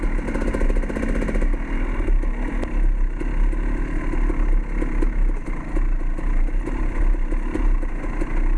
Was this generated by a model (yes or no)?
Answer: no